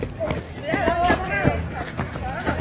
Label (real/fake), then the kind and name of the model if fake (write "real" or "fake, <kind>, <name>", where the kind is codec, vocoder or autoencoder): real